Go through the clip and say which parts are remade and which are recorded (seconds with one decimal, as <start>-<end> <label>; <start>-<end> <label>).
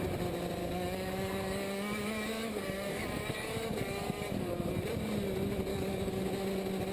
0.0-0.6 recorded; 0.6-4.7 remade; 4.7-5.7 recorded; 5.7-6.3 remade; 6.3-6.9 recorded